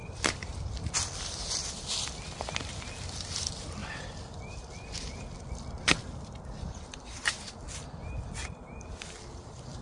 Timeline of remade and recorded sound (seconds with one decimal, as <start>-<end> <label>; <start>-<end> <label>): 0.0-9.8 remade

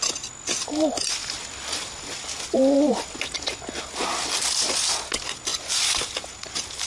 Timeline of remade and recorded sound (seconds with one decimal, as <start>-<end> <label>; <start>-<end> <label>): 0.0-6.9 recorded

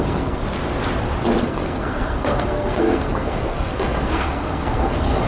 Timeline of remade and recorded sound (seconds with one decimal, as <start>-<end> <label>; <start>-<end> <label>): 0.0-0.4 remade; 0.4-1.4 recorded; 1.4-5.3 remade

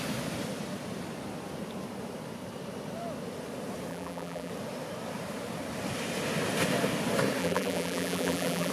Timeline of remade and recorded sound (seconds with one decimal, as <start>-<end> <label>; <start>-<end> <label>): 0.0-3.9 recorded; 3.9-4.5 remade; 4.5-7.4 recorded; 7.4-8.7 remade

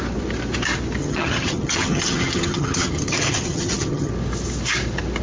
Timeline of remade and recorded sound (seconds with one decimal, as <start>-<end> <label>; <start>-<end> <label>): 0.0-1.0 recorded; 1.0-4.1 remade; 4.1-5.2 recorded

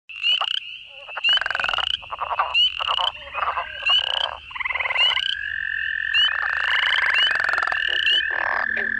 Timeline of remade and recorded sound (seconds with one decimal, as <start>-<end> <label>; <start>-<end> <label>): 0.0-4.2 recorded; 4.2-5.5 remade; 5.5-9.0 recorded

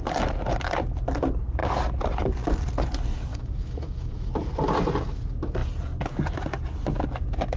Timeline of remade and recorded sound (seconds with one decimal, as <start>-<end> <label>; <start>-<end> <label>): 0.0-3.3 recorded; 3.3-4.3 remade; 4.3-7.6 recorded